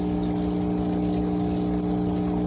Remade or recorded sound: recorded